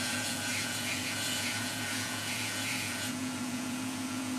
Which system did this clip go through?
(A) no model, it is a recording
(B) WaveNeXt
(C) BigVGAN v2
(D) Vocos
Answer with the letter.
D